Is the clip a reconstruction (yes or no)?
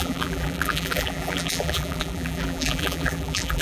yes